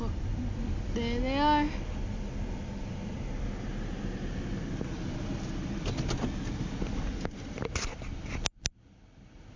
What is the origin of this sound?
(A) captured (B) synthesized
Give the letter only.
A